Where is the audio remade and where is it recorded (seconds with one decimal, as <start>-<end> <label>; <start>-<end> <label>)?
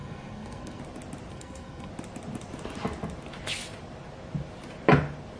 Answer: 0.0-0.8 remade; 0.8-1.3 recorded; 1.3-1.9 remade; 1.9-5.4 recorded